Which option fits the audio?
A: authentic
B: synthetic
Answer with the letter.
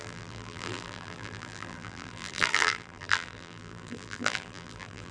B